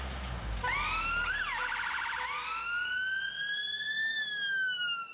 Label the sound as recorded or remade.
recorded